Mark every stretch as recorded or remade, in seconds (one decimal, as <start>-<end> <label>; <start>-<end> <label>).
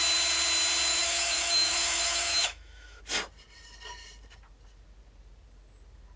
0.0-0.9 recorded; 0.9-3.0 remade; 3.0-6.2 recorded